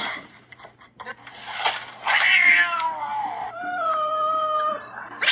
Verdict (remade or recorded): remade